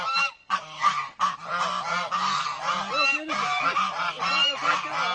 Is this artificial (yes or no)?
no